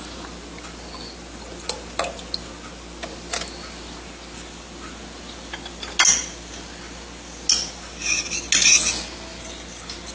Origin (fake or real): real